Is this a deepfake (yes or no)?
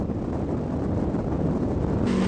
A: no